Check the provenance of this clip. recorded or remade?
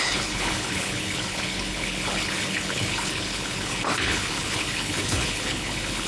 remade